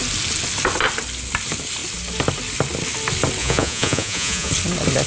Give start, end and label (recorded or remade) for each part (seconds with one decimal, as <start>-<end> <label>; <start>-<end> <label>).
0.0-3.4 recorded; 3.4-4.5 remade; 4.5-5.1 recorded